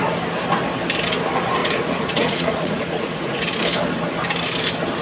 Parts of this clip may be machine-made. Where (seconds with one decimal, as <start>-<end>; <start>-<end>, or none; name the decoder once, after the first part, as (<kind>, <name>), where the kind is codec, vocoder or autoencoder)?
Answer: 1.6-3.4 (vocoder, Vocos)